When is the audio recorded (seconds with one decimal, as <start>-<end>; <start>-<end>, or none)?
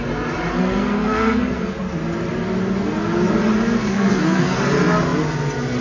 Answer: 0.0-0.5; 1.7-3.9; 4.6-5.8